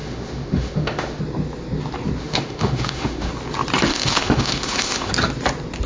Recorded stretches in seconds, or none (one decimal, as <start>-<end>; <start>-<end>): 1.2-2.2; 3.3-3.9; 5.1-5.9